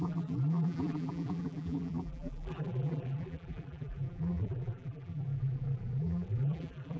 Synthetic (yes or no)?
yes